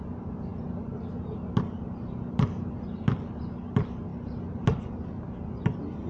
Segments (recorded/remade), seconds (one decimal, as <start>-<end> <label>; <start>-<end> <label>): 0.0-6.1 recorded

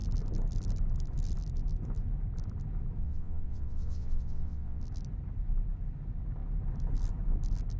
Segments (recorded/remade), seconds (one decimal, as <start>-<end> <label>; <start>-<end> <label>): 0.0-3.0 recorded; 3.0-4.8 remade; 4.8-7.8 recorded

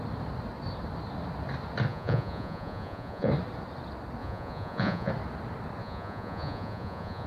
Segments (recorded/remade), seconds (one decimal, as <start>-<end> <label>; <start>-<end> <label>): 0.0-1.9 recorded; 1.9-3.3 remade; 3.3-4.2 recorded; 4.2-5.1 remade; 5.1-5.8 recorded; 5.8-7.3 remade

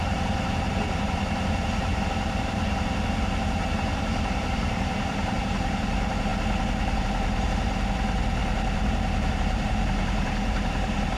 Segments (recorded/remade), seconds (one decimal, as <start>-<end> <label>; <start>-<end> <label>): 0.0-6.3 remade; 6.3-7.0 recorded; 7.0-11.2 remade